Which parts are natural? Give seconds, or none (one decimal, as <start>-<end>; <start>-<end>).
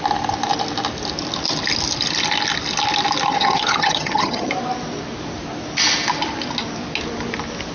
0.0-3.3; 4.5-7.7